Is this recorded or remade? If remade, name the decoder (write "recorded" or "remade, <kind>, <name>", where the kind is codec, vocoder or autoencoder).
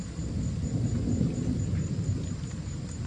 recorded